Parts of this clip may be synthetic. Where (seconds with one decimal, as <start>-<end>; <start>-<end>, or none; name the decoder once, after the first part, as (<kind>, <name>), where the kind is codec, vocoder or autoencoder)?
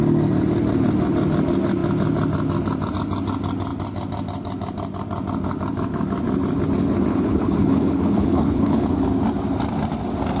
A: 7.1-8.9 (codec, HILCodec)